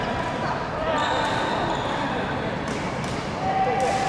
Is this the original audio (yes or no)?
yes